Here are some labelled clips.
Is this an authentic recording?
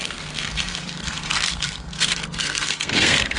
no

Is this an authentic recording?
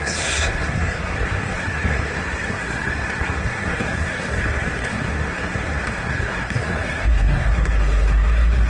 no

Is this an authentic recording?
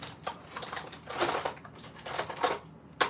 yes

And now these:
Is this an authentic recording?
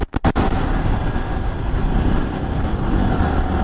yes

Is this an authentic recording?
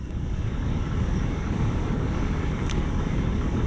no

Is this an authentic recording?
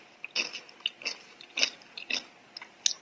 yes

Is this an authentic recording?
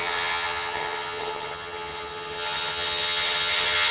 no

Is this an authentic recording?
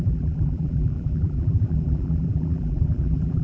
no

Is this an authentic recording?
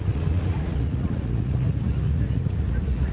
no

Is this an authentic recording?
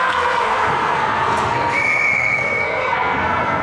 no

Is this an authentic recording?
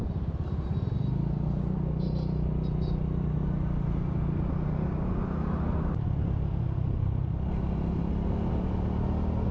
yes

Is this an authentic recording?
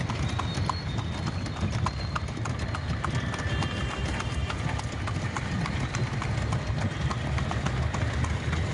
yes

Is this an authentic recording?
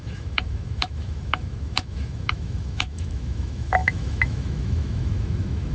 no